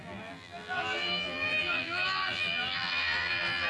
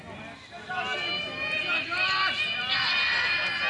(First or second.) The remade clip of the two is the first